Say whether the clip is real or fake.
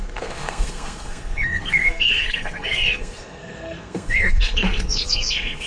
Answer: fake